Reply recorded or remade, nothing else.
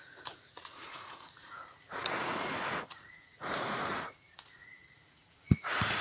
remade